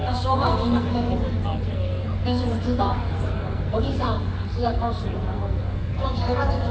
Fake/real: fake